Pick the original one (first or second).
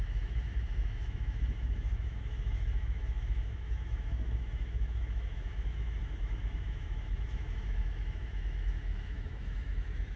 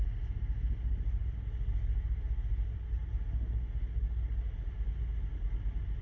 second